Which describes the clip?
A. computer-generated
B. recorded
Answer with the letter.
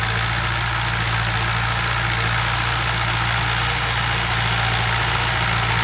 B